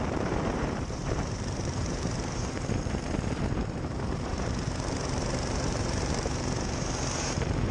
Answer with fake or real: fake